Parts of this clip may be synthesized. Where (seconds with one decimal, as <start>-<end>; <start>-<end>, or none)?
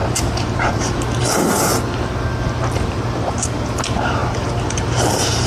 0.0-1.7; 2.8-5.5